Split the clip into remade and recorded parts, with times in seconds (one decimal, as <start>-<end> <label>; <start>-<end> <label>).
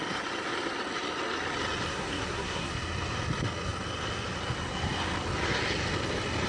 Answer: 0.0-1.9 recorded; 1.9-2.7 remade; 2.7-6.5 recorded